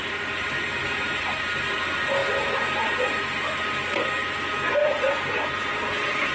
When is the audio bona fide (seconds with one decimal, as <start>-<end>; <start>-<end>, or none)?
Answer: 0.0-4.8